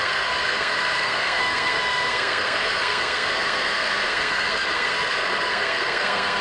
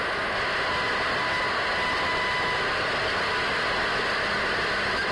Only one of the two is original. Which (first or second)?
second